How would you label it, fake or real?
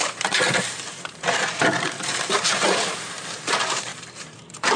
fake